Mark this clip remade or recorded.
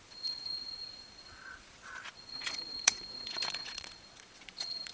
remade